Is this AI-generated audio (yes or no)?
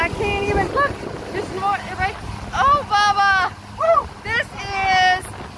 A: no